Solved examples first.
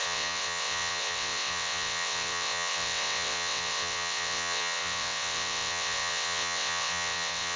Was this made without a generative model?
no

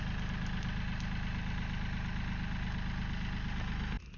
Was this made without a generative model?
yes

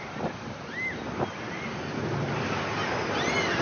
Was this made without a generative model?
yes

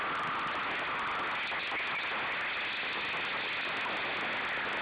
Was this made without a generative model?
yes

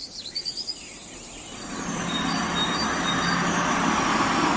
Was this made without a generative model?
yes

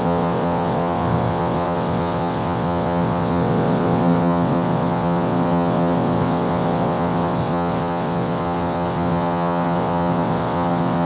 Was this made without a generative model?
no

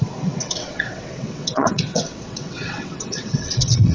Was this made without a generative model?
no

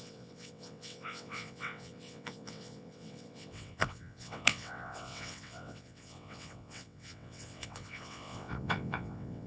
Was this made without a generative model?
no